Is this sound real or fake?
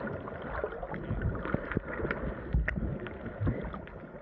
real